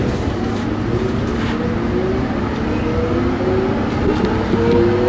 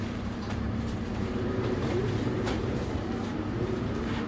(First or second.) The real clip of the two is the first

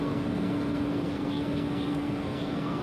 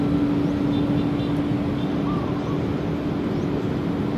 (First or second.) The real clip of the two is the second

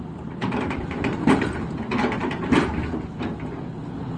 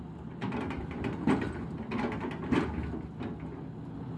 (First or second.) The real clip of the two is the second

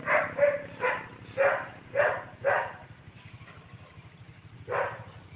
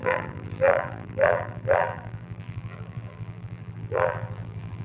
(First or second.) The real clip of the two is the first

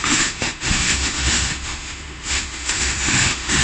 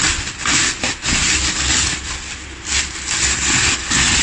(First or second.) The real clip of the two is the second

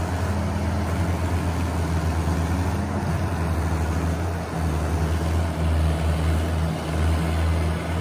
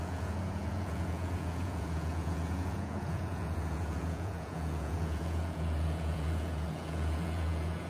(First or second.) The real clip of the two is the first